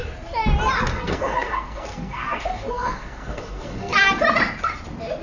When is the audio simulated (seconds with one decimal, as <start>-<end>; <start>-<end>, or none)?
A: 0.9-4.0

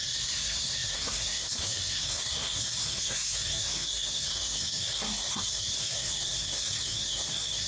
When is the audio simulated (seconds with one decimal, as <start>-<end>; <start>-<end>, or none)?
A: 0.0-7.7

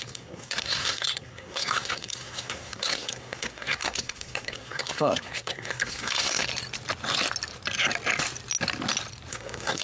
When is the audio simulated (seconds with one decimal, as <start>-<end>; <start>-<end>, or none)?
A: 0.0-6.5; 9.3-9.8

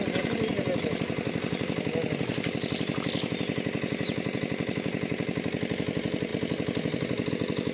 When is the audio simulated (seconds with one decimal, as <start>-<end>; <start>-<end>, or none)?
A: none

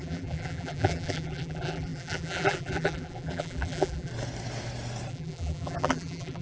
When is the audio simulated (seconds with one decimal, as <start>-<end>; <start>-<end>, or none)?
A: 0.0-4.1; 5.1-6.4